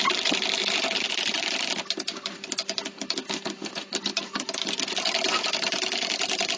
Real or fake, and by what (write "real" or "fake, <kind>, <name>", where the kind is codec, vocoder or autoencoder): real